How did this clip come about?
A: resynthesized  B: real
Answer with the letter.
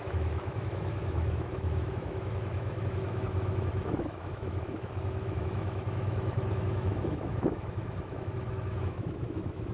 A